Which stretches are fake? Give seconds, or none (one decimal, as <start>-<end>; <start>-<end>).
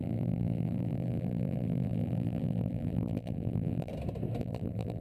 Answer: 0.0-3.9; 4.4-5.0